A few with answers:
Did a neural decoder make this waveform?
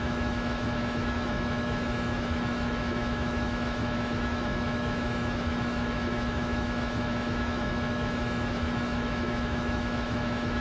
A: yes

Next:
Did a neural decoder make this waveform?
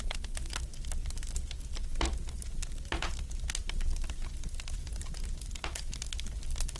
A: no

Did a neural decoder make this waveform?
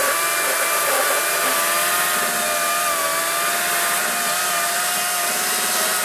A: no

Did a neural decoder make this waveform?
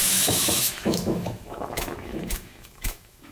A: yes